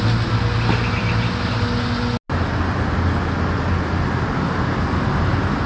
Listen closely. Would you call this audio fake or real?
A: real